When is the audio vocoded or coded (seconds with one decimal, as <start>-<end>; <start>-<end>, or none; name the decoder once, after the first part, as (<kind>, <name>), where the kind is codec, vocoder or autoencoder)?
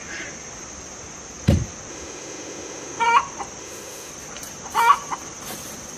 1.9-3.0 (autoencoder, DAC-VAE); 3.6-4.1